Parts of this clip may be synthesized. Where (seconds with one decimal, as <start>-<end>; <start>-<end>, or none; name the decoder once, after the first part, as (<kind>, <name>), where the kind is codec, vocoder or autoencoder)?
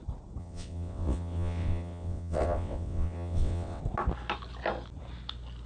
0.4-3.8 (vocoder, WaveNeXt)